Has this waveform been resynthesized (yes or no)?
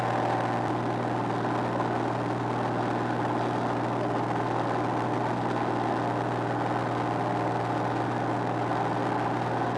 no